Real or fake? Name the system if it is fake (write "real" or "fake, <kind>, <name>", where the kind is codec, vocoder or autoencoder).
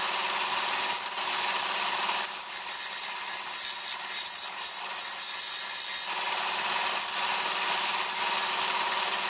real